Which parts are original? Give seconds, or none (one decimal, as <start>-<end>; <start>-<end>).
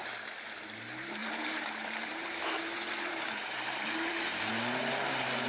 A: 0.0-1.2; 4.5-5.5